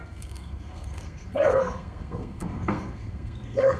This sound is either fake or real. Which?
fake